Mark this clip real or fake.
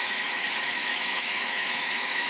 fake